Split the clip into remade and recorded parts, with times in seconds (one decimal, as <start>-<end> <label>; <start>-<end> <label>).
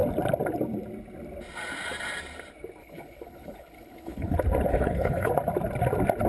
0.0-2.8 recorded; 2.8-4.3 remade; 4.3-4.7 recorded; 4.7-5.3 remade; 5.3-6.3 recorded